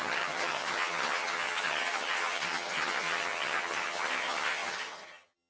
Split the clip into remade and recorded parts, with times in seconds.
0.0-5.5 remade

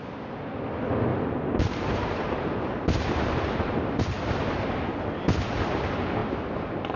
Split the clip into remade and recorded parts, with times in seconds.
0.0-1.1 recorded; 1.1-5.1 remade; 5.1-7.0 recorded